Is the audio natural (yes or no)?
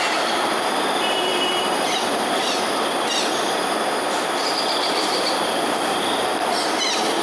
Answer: no